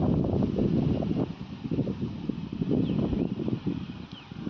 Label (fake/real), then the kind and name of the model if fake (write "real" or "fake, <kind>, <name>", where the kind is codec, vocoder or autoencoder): real